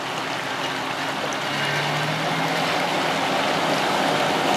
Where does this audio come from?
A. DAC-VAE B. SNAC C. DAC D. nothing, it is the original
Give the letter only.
D